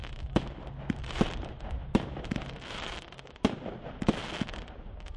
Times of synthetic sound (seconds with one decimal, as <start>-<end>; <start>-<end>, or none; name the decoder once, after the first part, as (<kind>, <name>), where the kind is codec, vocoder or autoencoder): 1.0-4.2 (vocoder, BigVGAN v2)